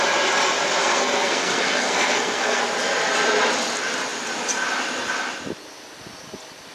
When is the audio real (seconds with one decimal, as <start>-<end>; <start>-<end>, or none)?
0.0-0.8; 2.6-6.7